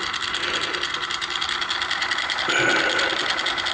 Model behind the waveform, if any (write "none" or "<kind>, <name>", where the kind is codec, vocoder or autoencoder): none